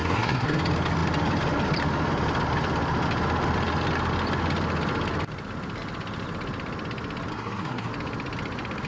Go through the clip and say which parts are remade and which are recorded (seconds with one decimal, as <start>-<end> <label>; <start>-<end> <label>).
0.0-0.6 remade; 0.6-7.3 recorded; 7.3-7.9 remade; 7.9-8.9 recorded